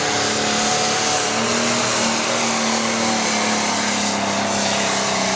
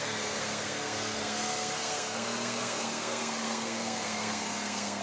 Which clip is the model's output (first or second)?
second